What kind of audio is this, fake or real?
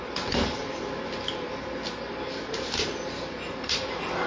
real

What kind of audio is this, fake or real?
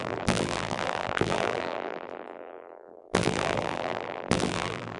fake